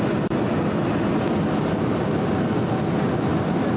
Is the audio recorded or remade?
recorded